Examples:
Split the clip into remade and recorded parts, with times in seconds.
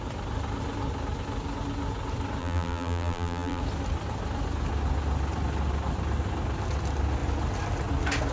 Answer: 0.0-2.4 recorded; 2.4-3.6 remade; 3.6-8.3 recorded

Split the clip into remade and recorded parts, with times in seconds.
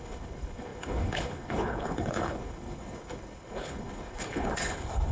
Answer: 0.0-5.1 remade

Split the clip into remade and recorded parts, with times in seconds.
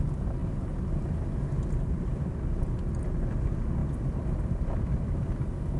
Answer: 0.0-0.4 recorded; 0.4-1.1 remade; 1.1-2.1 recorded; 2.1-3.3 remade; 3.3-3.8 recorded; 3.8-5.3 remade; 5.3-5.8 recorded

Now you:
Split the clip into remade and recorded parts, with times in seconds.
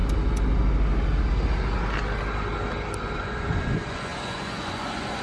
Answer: 0.0-3.1 recorded; 3.1-5.2 remade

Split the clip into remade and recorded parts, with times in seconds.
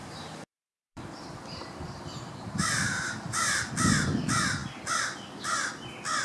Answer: 0.0-3.7 remade; 3.7-6.2 recorded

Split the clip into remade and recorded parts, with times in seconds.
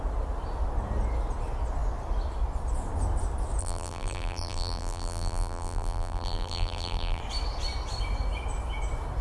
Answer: 0.0-3.6 recorded; 3.6-7.2 remade; 7.2-9.2 recorded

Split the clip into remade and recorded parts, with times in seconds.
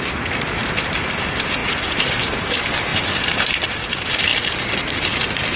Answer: 0.0-4.3 remade; 4.3-4.9 recorded; 4.9-5.6 remade